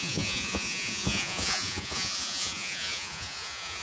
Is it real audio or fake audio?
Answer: fake